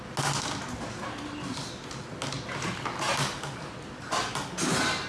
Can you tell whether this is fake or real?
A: real